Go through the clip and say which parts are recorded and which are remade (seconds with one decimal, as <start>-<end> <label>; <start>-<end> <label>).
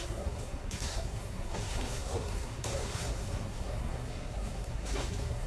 0.0-5.5 remade